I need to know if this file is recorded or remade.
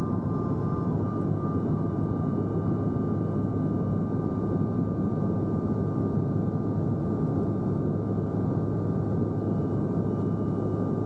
recorded